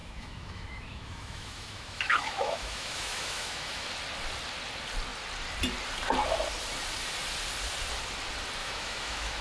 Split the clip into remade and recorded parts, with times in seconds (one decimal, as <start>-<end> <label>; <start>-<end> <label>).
0.0-3.9 remade; 3.9-8.6 recorded; 8.6-9.4 remade

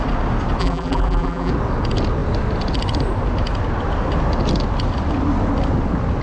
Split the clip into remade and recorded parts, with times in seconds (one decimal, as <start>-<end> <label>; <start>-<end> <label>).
0.0-0.6 recorded; 0.6-1.5 remade; 1.5-6.2 recorded

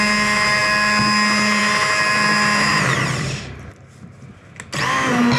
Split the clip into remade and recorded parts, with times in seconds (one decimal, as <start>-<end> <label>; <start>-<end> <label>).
0.0-5.4 recorded

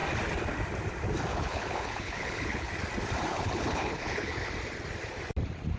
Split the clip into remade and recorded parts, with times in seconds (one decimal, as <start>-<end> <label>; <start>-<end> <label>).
0.0-1.3 recorded; 1.3-2.7 remade; 2.7-3.3 recorded; 3.3-4.5 remade; 4.5-5.8 recorded

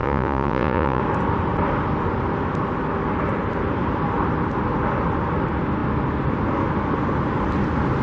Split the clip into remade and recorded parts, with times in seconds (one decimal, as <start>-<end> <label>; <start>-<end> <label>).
0.0-1.0 remade; 1.0-8.0 recorded

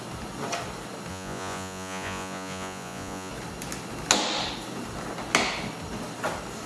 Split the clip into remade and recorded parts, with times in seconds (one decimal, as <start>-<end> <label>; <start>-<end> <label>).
0.0-1.1 recorded; 1.1-3.3 remade; 3.3-6.7 recorded

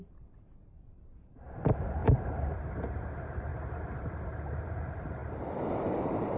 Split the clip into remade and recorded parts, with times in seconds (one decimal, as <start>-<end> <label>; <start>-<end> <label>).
0.0-3.5 remade; 3.5-4.0 recorded; 4.0-5.2 remade; 5.2-6.0 recorded; 6.0-6.4 remade

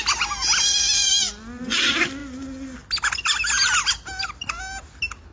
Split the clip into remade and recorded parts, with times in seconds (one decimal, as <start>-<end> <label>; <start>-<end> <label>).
0.0-5.3 recorded